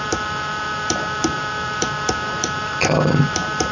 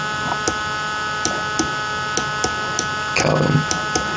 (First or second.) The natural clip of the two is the second